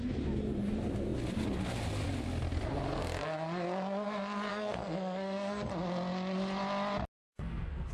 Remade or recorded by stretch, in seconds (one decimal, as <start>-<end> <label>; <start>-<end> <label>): 0.0-4.5 recorded; 4.5-5.7 remade; 5.7-7.2 recorded; 7.2-7.9 remade